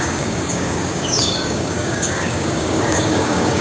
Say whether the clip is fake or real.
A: fake